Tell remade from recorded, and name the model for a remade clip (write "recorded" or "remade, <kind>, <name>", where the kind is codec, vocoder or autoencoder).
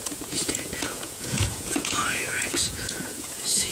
remade, vocoder, Vocos